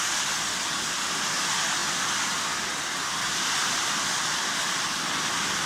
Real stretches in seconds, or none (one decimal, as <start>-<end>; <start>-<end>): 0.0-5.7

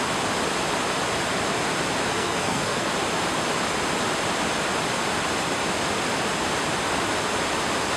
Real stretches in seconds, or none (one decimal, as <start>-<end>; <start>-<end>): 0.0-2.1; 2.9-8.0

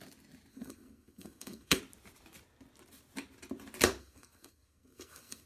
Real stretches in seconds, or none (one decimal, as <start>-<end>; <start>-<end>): 0.0-0.5; 1.8-4.0

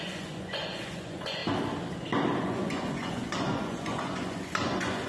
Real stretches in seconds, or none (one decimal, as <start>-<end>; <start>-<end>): 1.4-2.4

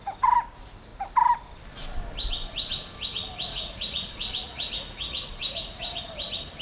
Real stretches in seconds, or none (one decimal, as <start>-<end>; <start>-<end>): 0.0-3.5; 6.0-6.6